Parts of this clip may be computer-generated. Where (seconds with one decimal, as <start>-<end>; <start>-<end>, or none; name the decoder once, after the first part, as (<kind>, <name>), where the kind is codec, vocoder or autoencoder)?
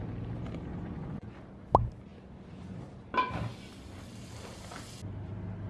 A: 0.7-1.3 (vocoder, Vocos)